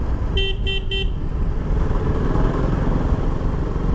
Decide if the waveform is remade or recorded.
recorded